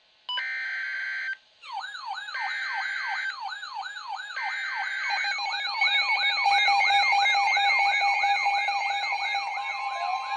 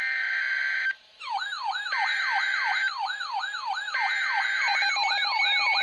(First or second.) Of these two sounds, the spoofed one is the second